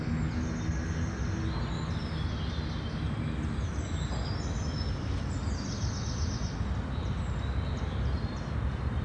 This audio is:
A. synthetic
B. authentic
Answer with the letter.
B